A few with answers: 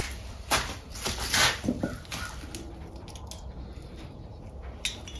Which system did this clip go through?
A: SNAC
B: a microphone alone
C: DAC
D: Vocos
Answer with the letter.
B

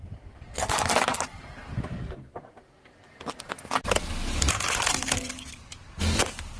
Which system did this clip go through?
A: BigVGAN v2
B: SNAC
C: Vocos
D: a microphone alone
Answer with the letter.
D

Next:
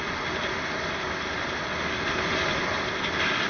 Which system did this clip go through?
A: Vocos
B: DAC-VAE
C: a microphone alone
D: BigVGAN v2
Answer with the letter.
C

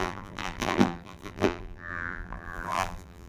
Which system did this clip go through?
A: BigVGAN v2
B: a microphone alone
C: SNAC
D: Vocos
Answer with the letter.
A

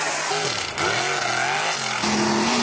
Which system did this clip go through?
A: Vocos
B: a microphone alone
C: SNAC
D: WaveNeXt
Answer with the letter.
B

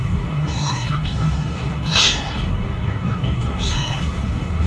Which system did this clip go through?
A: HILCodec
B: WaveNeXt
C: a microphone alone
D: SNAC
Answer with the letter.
D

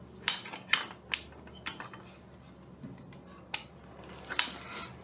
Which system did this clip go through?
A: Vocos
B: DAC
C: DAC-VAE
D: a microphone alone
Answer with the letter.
D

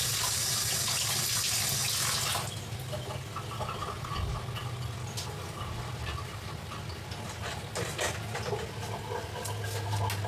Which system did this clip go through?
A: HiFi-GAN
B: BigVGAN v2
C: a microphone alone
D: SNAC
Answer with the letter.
C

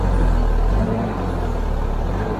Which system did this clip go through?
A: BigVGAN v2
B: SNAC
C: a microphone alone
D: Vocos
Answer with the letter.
C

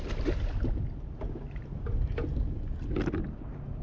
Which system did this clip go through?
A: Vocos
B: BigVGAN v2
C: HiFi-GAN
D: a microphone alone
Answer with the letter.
D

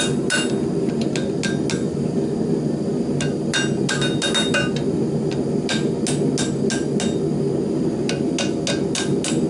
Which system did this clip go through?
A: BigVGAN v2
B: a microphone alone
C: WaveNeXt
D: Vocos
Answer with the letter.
B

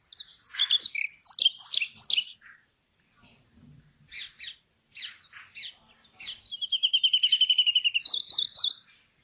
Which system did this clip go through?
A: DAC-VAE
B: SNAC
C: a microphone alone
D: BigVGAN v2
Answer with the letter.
C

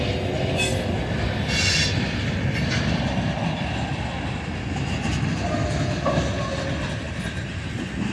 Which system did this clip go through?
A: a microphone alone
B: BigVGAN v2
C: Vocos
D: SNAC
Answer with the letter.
A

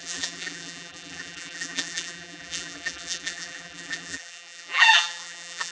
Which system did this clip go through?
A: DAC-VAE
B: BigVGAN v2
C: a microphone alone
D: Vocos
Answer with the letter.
B